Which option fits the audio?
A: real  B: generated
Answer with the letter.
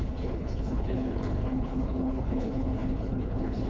B